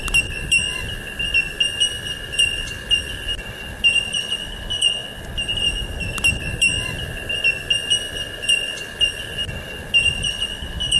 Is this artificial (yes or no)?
no